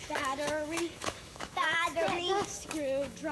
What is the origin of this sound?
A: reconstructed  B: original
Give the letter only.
A